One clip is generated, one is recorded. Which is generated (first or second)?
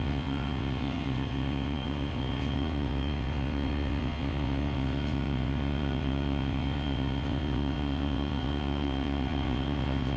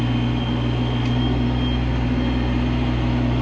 first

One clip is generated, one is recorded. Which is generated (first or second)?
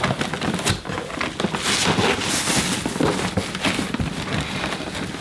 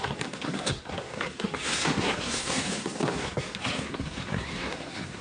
second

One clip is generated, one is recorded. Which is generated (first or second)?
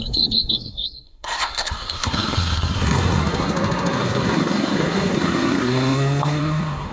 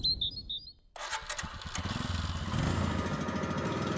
first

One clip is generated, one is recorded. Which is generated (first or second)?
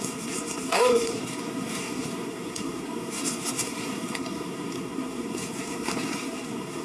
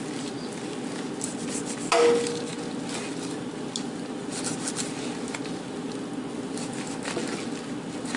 first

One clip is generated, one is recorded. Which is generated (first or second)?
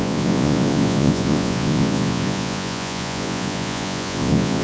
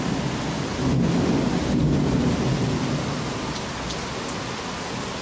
first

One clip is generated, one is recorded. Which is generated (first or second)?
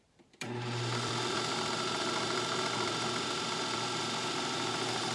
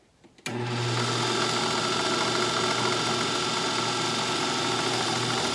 first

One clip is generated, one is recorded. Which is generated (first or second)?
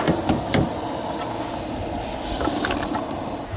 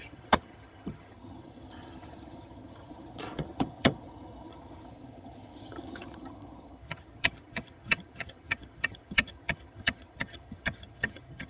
second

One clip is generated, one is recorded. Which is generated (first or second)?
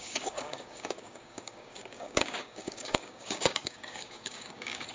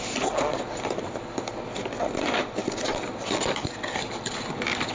first